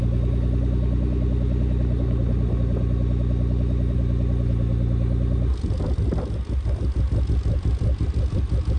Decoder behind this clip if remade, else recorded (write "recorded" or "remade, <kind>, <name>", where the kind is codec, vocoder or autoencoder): remade, vocoder, BigVGAN v2